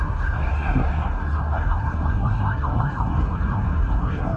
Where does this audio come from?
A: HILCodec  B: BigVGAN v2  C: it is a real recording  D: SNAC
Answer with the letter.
D